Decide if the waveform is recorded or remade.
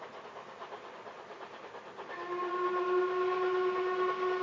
recorded